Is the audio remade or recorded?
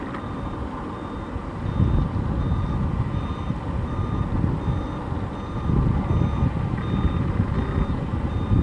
recorded